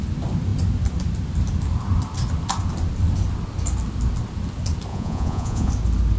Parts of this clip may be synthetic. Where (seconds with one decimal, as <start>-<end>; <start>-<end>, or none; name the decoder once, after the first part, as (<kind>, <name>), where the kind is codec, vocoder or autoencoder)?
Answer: 4.9-5.7 (vocoder, Vocos)